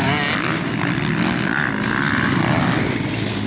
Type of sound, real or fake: real